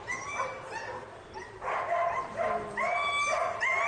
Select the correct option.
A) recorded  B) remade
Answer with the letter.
A